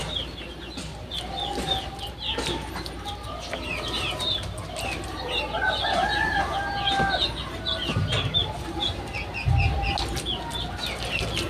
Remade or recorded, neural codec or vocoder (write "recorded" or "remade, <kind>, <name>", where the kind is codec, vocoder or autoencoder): recorded